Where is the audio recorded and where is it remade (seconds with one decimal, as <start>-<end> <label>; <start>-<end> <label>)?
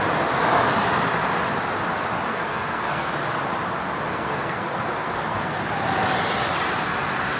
0.0-2.3 recorded; 2.3-3.1 remade; 3.1-4.1 recorded; 4.1-5.6 remade; 5.6-7.4 recorded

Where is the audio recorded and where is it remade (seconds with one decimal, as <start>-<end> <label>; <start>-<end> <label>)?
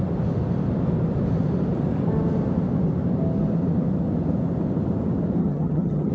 0.0-5.4 recorded; 5.4-6.1 remade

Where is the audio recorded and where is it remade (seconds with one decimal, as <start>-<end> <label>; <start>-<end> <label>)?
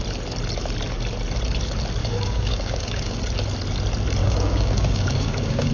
0.0-2.0 recorded; 2.0-3.2 remade; 3.2-4.2 recorded; 4.2-5.7 remade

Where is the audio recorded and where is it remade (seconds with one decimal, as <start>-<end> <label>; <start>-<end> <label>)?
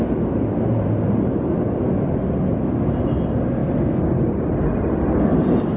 0.0-5.8 recorded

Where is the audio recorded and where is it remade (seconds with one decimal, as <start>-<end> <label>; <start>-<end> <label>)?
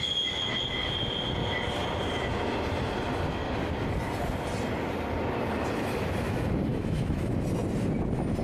0.0-6.7 recorded; 6.7-7.3 remade; 7.3-8.4 recorded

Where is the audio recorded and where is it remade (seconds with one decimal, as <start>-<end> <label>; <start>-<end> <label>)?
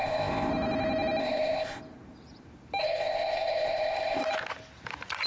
0.0-0.5 remade; 0.5-1.2 recorded; 1.2-1.8 remade; 1.8-2.8 recorded; 2.8-4.2 remade; 4.2-5.3 recorded